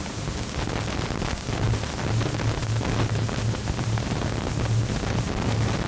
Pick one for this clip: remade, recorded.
recorded